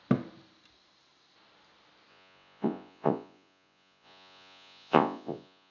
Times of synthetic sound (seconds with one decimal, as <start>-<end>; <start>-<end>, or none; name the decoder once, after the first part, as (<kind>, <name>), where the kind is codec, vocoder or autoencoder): 2.1-5.7 (vocoder, Vocos)